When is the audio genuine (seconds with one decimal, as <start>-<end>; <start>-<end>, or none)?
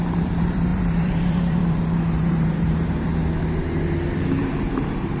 3.1-4.4